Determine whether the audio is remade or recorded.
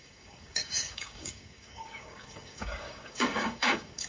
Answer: remade